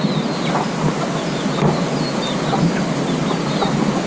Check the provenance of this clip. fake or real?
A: real